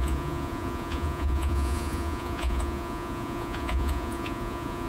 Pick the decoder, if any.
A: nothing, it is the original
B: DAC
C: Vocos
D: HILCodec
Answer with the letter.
C